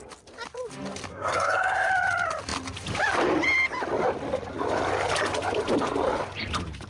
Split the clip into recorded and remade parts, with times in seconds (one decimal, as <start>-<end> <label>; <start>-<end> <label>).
0.0-1.1 recorded; 1.1-1.9 remade; 1.9-6.9 recorded